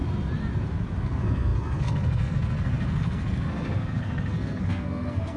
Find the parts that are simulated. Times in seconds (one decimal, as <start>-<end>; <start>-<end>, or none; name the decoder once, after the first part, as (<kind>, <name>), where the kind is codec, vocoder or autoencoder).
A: 1.0-5.4 (codec, SNAC)